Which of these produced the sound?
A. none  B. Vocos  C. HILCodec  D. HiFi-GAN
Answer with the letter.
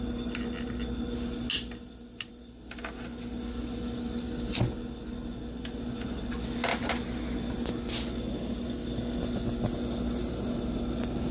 A